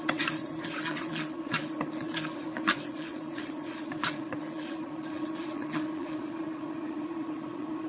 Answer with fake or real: fake